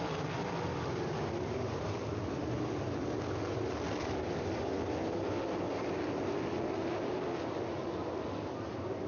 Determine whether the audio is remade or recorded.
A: recorded